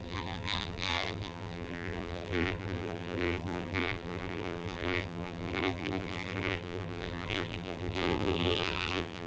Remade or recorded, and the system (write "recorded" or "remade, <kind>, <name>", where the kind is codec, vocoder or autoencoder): remade, vocoder, BigVGAN v2